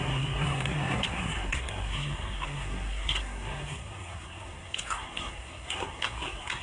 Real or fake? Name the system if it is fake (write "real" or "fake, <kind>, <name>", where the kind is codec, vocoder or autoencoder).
fake, codec, SNAC